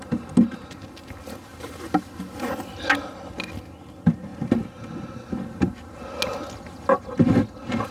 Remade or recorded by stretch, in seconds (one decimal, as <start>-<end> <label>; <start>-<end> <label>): 0.0-7.9 recorded